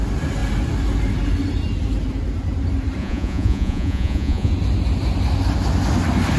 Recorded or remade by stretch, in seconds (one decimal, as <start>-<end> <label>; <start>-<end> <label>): 0.0-3.0 recorded; 3.0-4.5 remade; 4.5-6.4 recorded